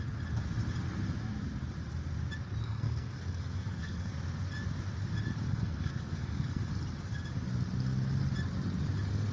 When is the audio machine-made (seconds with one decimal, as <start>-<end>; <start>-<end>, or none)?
2.6-4.1; 5.5-6.7